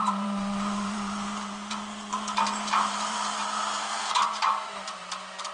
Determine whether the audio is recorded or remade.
remade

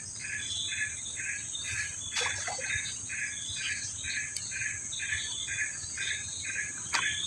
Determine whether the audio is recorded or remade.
recorded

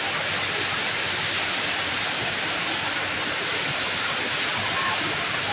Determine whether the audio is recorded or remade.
recorded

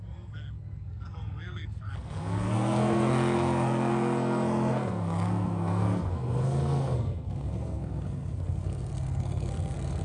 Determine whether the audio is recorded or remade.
remade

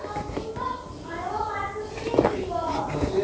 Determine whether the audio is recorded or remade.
recorded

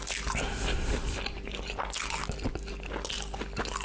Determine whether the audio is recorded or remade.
recorded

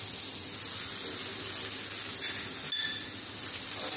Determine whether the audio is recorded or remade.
recorded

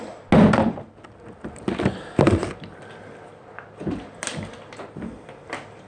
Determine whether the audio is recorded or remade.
recorded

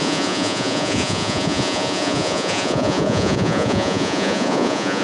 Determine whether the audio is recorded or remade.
remade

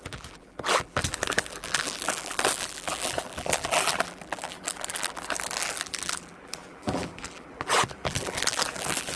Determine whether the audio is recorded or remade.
remade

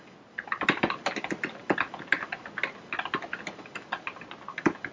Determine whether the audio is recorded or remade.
recorded